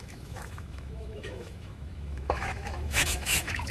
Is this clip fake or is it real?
fake